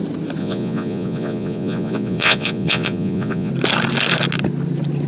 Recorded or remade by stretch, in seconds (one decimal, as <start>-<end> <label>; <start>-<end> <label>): 0.0-0.4 recorded; 0.4-3.5 remade; 3.5-5.1 recorded